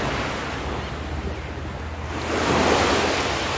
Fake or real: real